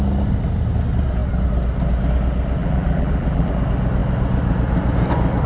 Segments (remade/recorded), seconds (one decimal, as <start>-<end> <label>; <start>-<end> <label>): 0.0-2.6 recorded; 2.6-3.5 remade; 3.5-5.5 recorded